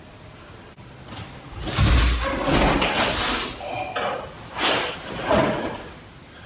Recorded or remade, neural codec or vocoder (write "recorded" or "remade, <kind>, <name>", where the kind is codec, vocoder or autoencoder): recorded